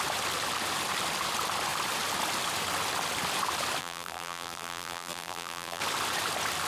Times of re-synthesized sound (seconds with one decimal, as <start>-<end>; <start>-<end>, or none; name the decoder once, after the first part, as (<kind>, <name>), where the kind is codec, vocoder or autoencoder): 3.8-5.8 (vocoder, BigVGAN v2)